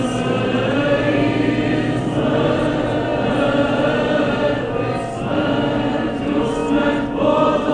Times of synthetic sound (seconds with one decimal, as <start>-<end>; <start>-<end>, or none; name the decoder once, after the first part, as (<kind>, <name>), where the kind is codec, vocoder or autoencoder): 0.0-3.1 (vocoder, BigVGAN v2); 4.2-6.6